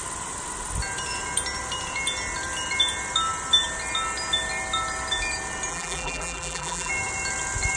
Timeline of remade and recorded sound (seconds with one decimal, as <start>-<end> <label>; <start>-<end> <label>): 0.0-5.7 recorded; 5.7-6.9 remade; 6.9-7.8 recorded